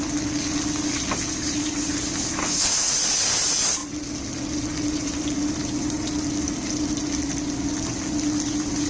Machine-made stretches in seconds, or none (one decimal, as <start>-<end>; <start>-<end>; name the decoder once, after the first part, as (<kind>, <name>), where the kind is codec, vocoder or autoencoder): 2.4-2.9 (codec, HILCodec)